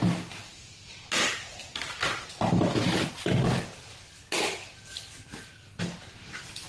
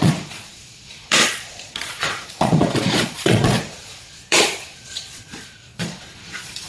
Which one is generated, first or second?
second